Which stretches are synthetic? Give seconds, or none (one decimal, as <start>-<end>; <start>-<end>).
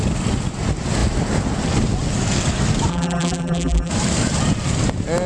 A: 2.9-3.9